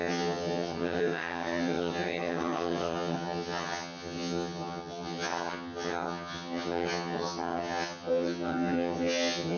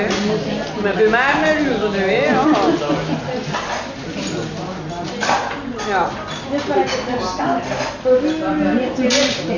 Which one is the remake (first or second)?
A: first